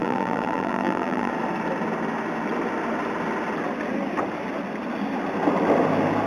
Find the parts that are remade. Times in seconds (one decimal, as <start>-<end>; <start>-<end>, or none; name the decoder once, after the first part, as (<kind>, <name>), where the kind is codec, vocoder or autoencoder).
0.0-1.3 (vocoder, BigVGAN v2)